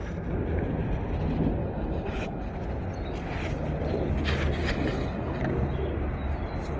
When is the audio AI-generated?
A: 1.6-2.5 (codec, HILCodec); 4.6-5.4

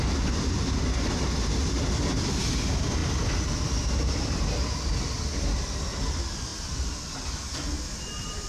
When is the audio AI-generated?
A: none

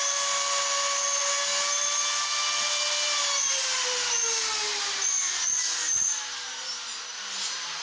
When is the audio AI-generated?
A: none

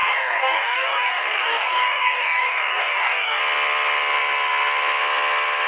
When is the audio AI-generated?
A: 0.0-3.4 (codec, DAC)

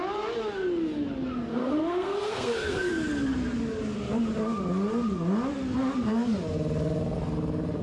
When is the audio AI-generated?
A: 1.5-2.9 (codec, SNAC)

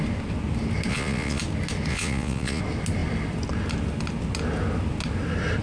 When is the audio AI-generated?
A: 0.9-1.4 (vocoder, Vocos); 1.9-2.6